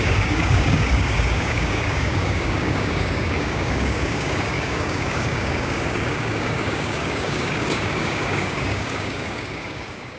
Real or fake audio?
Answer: fake